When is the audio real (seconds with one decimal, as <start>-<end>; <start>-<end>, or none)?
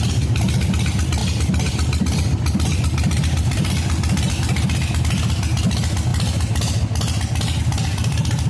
0.0-1.2; 5.0-8.5